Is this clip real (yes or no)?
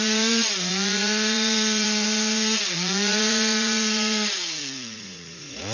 no